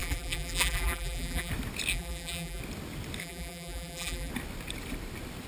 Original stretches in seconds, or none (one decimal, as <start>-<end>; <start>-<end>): 1.5-1.9; 2.6-3.2; 4.3-5.5